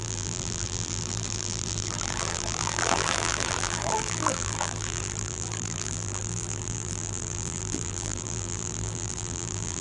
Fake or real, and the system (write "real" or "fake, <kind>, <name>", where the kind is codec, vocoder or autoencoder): fake, vocoder, BigVGAN v2